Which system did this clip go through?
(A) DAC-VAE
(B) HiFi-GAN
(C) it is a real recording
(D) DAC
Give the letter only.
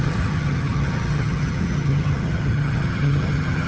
B